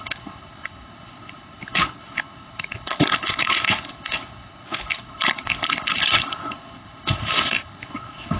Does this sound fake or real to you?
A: fake